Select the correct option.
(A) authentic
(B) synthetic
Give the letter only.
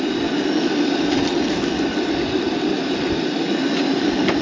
A